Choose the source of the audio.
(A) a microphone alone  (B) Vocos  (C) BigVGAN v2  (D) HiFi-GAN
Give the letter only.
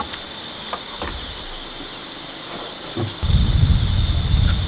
A